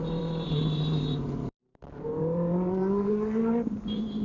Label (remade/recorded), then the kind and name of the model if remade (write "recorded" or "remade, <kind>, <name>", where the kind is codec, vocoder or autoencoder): remade, vocoder, BigVGAN v2